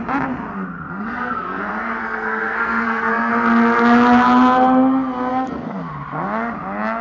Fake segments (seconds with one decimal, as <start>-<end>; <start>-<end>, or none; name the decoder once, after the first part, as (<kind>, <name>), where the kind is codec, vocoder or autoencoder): 0.5-1.6 (codec, SNAC); 2.0-3.3; 5.3-5.8